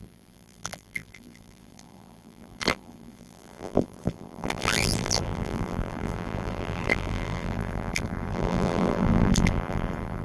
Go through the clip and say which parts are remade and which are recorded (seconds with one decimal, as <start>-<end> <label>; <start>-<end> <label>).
0.0-10.2 remade